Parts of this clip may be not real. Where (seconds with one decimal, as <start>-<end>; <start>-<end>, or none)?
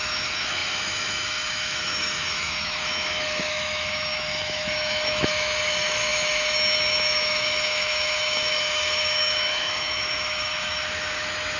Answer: 0.0-11.6